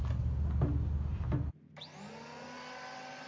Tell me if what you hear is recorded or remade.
recorded